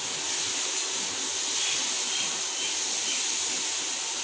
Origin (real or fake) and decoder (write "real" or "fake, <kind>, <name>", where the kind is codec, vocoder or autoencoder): real